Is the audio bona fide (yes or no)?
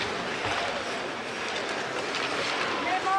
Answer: yes